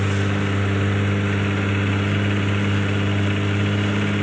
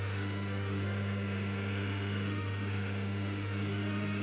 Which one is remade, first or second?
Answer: second